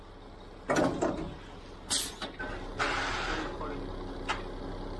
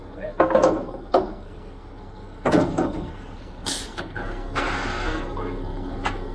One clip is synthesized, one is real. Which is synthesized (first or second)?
second